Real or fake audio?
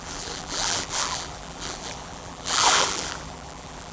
fake